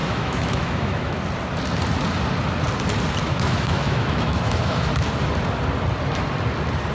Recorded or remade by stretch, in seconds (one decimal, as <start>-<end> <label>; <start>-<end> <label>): 0.0-1.2 remade; 1.2-3.2 recorded; 3.2-4.9 remade; 4.9-6.9 recorded